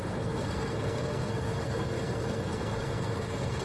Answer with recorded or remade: remade